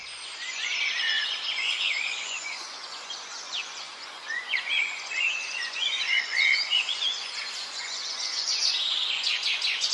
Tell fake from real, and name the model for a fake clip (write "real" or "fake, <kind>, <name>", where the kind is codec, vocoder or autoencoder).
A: fake, vocoder, Vocos